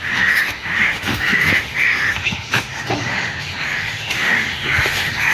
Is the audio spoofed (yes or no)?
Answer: yes